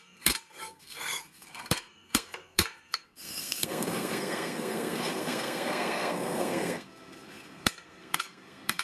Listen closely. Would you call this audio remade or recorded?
remade